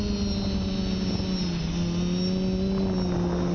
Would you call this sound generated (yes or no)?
no